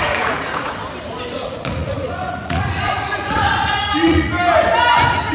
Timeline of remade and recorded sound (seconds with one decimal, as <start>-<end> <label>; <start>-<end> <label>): 0.0-0.7 remade; 0.7-1.3 recorded; 1.3-4.3 remade; 4.3-5.3 recorded